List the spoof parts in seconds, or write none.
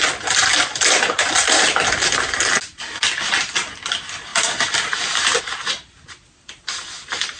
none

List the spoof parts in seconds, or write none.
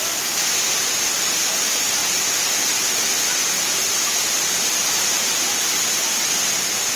none